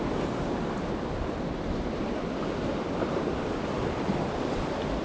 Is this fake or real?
real